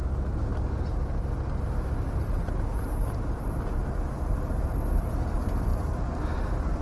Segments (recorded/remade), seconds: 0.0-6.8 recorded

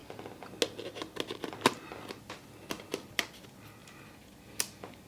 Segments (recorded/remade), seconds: 0.0-5.1 recorded

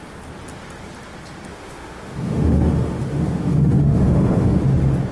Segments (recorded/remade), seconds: 0.0-1.5 recorded; 1.5-4.6 remade; 4.6-5.1 recorded

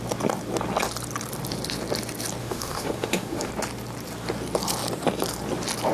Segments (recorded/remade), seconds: 0.0-2.4 recorded; 2.4-3.5 remade; 3.5-5.9 recorded